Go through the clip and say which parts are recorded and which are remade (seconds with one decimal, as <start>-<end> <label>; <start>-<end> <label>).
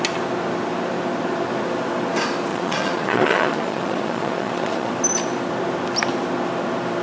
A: 0.0-2.5 recorded; 2.5-4.9 remade; 4.9-7.0 recorded